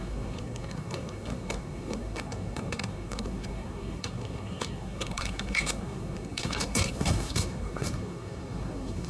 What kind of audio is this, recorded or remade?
remade